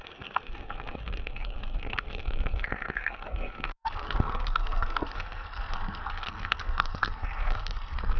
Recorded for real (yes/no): no